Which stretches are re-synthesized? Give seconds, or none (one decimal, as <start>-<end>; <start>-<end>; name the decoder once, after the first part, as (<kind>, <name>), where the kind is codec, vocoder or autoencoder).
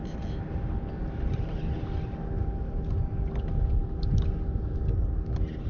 none